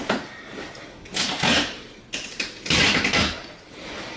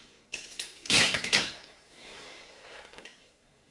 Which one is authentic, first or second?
first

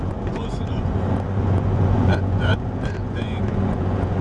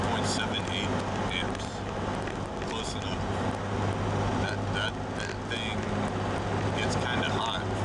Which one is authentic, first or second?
second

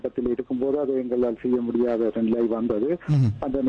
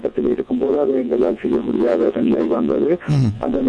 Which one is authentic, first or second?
first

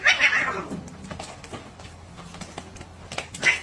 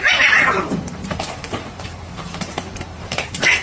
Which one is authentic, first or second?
first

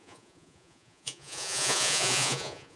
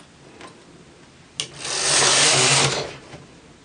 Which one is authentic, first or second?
second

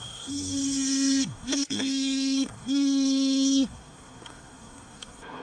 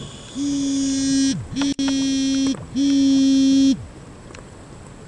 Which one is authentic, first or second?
second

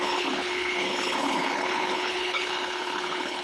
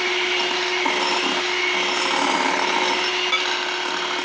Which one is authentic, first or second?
second